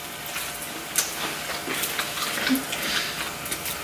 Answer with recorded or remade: recorded